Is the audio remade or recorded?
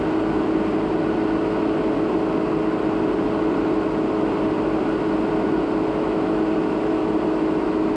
recorded